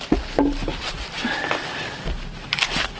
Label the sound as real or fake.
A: real